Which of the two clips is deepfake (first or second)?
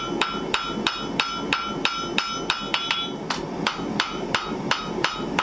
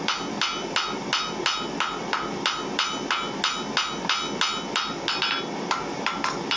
first